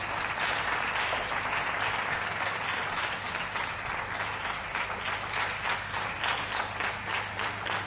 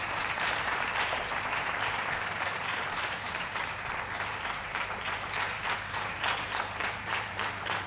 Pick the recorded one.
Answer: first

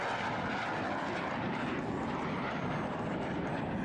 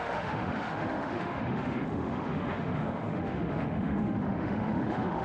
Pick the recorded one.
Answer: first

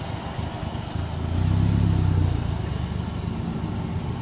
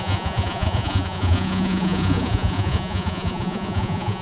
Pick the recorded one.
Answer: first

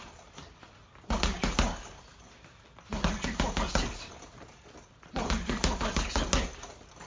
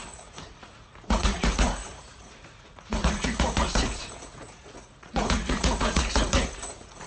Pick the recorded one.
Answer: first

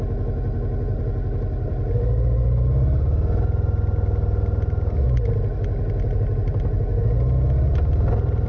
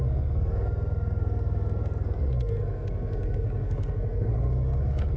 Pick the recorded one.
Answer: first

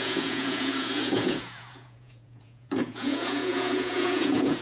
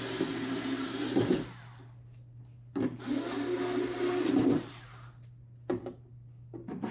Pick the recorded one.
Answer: second